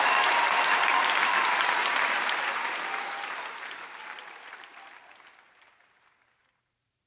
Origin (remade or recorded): remade